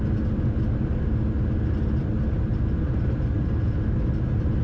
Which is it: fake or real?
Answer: real